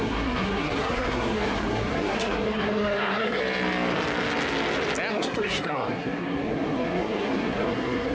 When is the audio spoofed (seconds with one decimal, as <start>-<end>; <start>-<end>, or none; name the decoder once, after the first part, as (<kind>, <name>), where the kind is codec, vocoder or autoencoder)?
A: 0.0-3.4 (codec, SNAC); 5.1-8.1